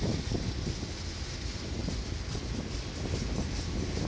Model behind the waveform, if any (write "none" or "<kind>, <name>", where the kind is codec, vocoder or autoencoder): none